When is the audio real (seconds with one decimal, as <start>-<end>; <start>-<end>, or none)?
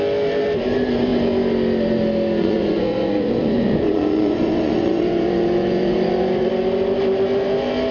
0.0-2.4; 6.5-7.9